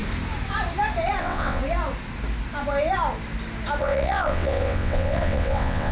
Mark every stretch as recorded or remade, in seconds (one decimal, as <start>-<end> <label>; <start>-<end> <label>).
0.0-1.2 recorded; 1.2-1.6 remade; 1.6-3.8 recorded; 3.8-5.9 remade